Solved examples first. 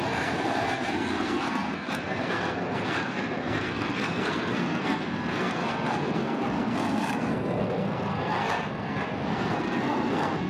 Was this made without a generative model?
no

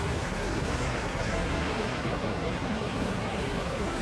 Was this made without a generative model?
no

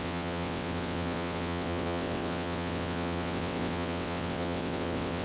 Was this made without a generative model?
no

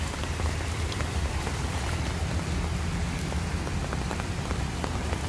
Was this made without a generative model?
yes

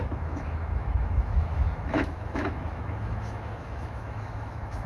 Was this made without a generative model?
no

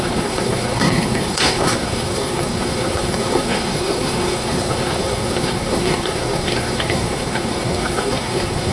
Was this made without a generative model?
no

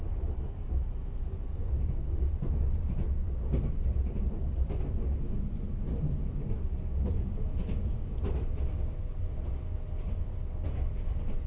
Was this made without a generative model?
yes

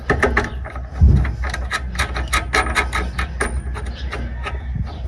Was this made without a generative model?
yes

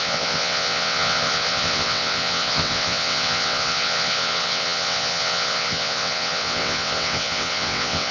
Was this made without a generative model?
no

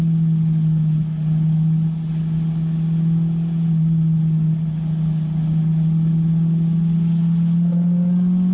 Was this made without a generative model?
yes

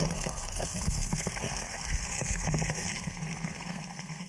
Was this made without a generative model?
no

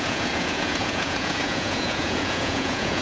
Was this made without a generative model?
no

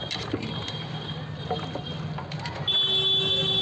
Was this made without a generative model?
yes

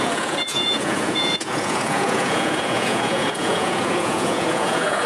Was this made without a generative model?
no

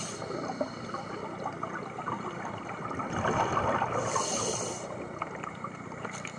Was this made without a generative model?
no